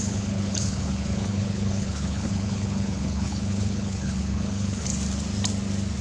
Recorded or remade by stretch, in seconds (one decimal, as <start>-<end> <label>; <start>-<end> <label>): 0.0-4.9 remade; 4.9-6.0 recorded

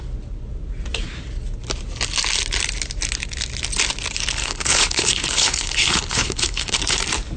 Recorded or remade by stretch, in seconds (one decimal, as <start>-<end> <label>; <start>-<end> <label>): 0.0-4.4 recorded; 4.4-6.8 remade; 6.8-7.4 recorded

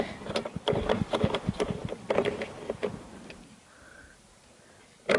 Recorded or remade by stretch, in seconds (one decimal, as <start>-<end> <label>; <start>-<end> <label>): 0.0-5.2 recorded

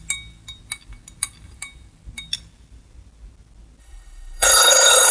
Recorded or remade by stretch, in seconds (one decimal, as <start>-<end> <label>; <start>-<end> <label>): 0.0-3.8 recorded; 3.8-5.1 remade

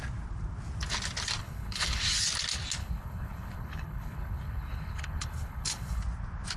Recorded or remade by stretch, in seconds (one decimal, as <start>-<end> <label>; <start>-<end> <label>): 0.0-1.4 recorded; 1.4-2.0 remade; 2.0-2.8 recorded; 2.8-6.0 remade; 6.0-6.6 recorded

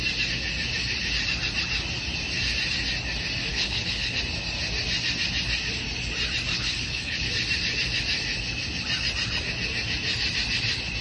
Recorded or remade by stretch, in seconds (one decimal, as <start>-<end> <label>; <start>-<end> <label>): 0.0-3.5 recorded; 3.5-4.2 remade; 4.2-6.5 recorded; 6.5-7.3 remade; 7.3-11.0 recorded

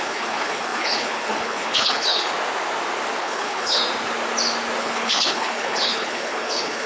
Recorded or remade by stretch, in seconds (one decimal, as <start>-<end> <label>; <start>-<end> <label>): 0.0-2.3 remade; 2.3-3.2 recorded; 3.2-3.8 remade; 3.8-4.8 recorded; 4.8-6.9 remade